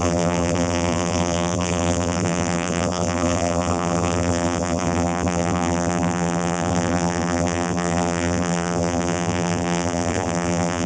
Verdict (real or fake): fake